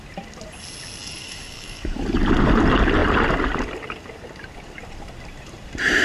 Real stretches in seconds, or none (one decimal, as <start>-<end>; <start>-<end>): 0.0-1.0; 2.0-6.0